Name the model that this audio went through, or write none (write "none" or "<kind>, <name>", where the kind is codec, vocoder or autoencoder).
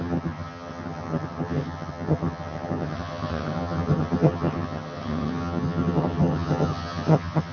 vocoder, HiFi-GAN